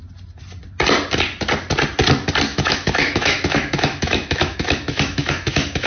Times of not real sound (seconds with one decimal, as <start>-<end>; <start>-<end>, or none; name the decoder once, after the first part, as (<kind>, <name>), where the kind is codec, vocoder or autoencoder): 2.5-5.9 (autoencoder, DAC-VAE)